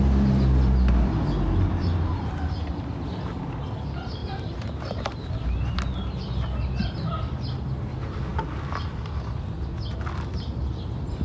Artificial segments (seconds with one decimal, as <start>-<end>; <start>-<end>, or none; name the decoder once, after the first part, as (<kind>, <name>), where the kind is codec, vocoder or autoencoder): 4.2-5.8 (vocoder, BigVGAN v2)